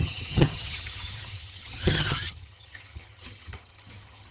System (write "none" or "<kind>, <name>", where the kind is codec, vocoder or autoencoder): vocoder, HiFi-GAN